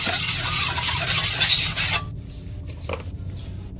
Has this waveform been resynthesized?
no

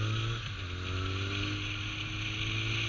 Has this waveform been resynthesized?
no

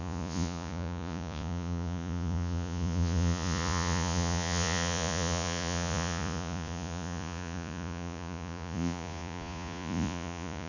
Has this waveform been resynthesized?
yes